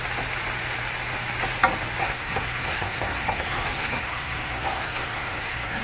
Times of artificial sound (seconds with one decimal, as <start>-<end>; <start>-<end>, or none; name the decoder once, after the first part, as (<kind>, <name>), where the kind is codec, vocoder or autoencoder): 2.0-5.8 (codec, SNAC)